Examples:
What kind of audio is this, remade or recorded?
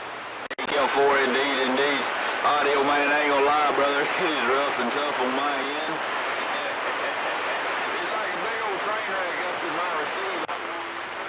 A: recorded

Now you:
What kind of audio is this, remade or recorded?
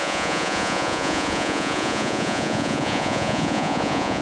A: remade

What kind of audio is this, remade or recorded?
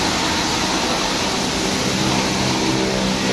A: recorded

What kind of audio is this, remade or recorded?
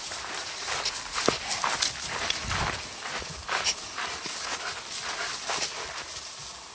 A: recorded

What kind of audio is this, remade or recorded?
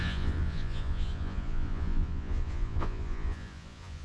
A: remade